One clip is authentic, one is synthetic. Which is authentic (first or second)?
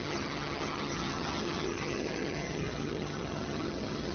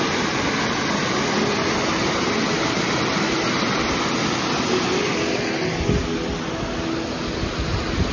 second